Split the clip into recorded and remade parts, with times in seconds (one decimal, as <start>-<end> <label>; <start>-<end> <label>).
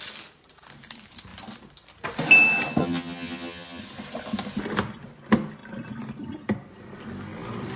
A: 0.0-2.8 recorded; 2.8-3.8 remade; 3.8-7.8 recorded